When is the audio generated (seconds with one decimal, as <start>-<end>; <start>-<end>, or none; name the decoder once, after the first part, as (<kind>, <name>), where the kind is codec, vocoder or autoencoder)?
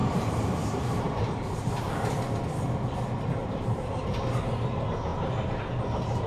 0.0-1.6 (vocoder, BigVGAN v2); 3.4-4.4